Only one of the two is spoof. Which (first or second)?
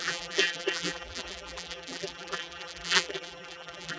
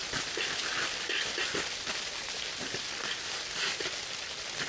first